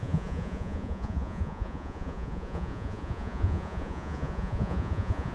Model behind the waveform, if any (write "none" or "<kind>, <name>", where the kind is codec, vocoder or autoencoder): vocoder, Vocos